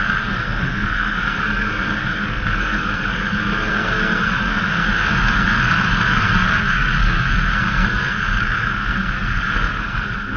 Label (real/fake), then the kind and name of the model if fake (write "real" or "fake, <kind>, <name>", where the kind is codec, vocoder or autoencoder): fake, codec, SNAC